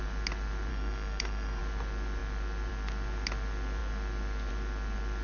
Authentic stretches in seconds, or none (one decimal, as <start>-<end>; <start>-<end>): 0.0-0.7; 1.6-5.2